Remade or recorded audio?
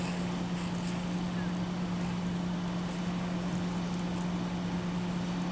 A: recorded